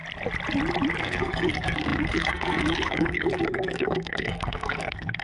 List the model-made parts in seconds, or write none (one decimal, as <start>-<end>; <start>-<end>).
1.0-5.2